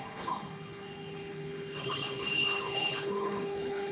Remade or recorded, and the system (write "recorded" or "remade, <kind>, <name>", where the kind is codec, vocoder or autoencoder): remade, codec, HILCodec